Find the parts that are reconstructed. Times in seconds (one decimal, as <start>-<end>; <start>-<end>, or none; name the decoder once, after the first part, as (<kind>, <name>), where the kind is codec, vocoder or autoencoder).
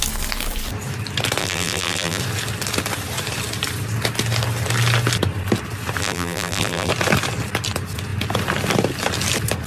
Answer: 1.4-2.2 (vocoder, BigVGAN v2); 6.0-6.9